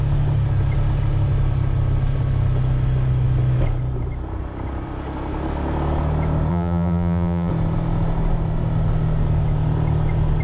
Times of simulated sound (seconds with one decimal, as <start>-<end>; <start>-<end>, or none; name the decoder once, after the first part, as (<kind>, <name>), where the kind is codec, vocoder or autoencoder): 6.5-7.5 (vocoder, BigVGAN v2)